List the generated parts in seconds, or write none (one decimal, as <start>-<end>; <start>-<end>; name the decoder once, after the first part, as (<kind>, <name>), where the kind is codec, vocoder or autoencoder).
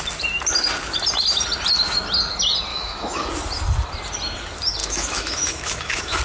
2.7-3.3 (autoencoder, DAC-VAE); 4.8-6.2